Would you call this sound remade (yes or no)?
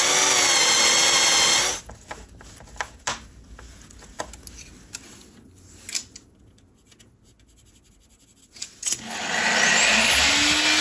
no